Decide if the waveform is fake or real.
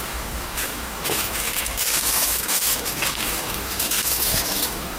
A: fake